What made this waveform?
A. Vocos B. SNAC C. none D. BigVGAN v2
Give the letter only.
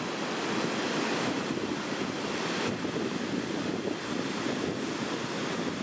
C